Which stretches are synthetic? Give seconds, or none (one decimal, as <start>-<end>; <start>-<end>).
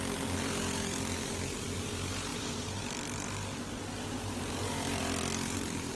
2.3-2.8